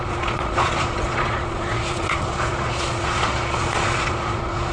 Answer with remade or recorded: remade